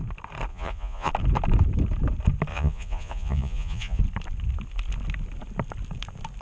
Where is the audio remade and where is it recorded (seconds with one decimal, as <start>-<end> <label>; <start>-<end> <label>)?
0.0-0.5 recorded; 0.5-1.1 remade; 1.1-2.5 recorded; 2.5-4.0 remade; 4.0-6.4 recorded

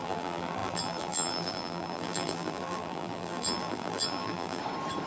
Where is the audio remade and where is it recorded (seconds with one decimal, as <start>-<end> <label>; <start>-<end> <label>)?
0.0-4.6 remade; 4.6-5.1 recorded

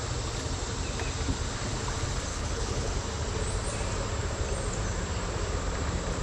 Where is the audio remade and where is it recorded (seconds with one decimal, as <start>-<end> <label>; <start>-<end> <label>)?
0.0-2.3 recorded; 2.3-2.9 remade; 2.9-6.2 recorded

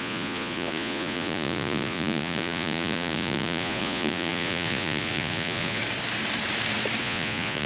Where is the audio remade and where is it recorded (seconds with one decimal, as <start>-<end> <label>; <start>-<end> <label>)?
0.0-5.8 remade; 5.8-7.0 recorded; 7.0-7.7 remade

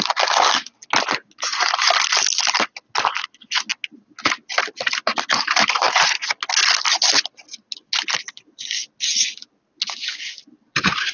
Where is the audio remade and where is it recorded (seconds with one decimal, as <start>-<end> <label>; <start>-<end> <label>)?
0.0-11.1 recorded

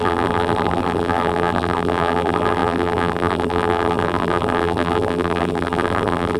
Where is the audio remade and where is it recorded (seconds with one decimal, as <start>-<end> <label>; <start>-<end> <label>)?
0.0-6.4 remade

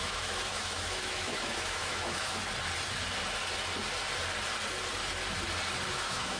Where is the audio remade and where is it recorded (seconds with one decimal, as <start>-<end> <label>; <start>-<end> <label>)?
0.0-2.4 remade; 2.4-5.9 recorded; 5.9-6.4 remade